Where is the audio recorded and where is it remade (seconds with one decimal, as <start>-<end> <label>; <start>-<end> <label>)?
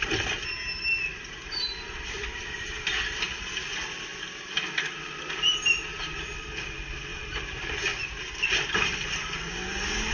0.0-1.1 recorded; 1.1-2.7 remade; 2.7-7.1 recorded; 7.1-7.7 remade; 7.7-10.1 recorded